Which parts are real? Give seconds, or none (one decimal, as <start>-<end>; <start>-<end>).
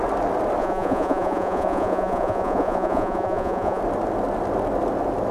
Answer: 0.0-0.6; 3.8-5.3